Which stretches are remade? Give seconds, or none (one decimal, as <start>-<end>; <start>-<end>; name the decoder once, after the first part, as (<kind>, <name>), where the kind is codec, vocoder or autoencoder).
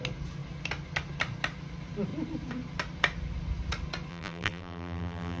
4.1-5.4 (vocoder, BigVGAN v2)